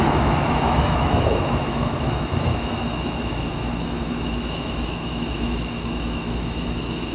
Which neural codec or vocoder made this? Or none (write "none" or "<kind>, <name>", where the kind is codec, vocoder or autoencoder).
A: autoencoder, DAC-VAE